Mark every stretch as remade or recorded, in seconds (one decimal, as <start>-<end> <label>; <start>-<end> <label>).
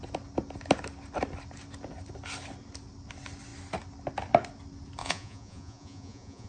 0.0-5.0 recorded; 5.0-6.5 remade